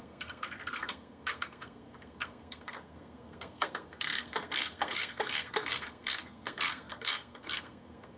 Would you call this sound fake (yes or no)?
yes